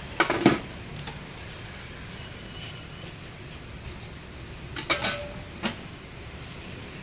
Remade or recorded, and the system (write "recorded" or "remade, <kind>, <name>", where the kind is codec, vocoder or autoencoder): remade, vocoder, BigVGAN v2